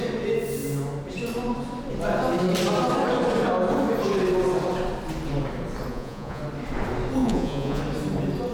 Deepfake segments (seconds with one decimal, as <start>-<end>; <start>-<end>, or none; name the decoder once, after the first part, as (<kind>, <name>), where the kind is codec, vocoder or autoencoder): 5.9-6.4 (vocoder, Vocos); 7.2-7.8